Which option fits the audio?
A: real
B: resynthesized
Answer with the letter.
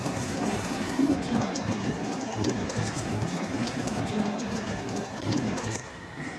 B